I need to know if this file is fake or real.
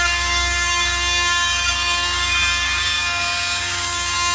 fake